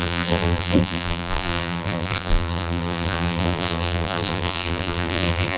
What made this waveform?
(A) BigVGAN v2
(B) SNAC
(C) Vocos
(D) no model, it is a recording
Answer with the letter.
A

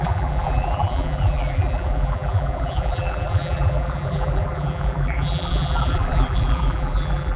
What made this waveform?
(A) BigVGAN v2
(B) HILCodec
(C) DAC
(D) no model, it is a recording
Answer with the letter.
A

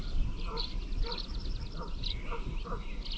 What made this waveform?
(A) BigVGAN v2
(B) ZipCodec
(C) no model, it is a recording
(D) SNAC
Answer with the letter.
A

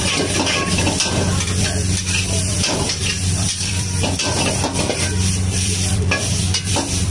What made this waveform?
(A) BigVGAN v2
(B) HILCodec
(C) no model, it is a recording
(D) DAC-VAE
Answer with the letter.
A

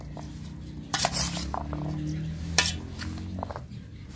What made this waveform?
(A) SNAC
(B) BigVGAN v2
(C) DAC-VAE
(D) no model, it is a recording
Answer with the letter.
D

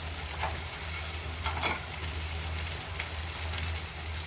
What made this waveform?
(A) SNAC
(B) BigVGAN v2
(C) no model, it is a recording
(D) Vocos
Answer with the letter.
C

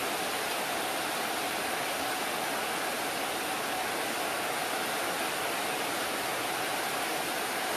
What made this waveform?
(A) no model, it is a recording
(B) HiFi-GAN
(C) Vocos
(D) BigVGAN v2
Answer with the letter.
A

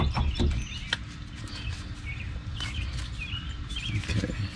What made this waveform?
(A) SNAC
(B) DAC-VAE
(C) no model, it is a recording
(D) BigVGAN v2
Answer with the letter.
C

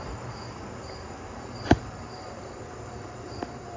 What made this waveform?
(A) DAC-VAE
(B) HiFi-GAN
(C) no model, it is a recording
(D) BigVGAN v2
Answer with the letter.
D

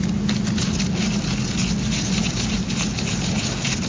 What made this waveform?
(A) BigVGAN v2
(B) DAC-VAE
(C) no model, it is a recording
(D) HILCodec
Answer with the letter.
C